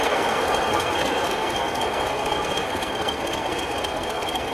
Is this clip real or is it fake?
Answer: fake